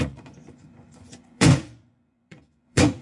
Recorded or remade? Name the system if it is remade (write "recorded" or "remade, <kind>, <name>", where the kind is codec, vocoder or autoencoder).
remade, vocoder, Vocos